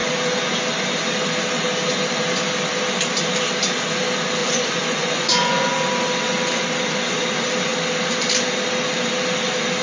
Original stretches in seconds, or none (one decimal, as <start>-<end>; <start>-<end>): 0.0-4.4; 5.7-9.8